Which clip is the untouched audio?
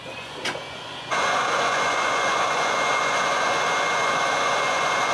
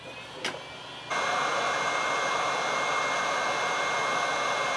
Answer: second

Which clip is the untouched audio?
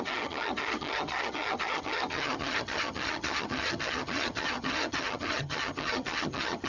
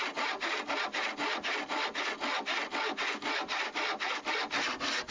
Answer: second